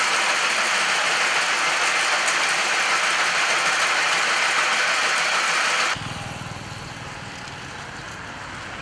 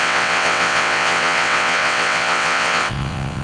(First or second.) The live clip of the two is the first